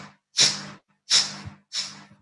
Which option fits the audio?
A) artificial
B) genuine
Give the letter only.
B